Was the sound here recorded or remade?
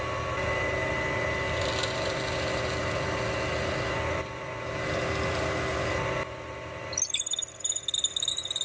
recorded